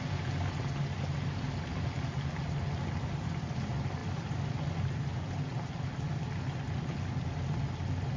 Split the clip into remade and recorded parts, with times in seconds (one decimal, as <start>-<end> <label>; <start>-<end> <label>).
0.0-8.2 recorded